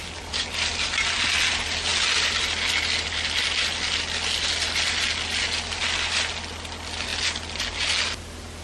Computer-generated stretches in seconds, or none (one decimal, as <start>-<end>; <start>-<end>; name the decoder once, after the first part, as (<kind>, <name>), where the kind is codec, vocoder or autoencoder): none